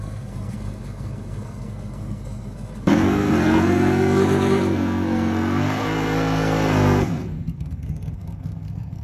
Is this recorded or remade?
remade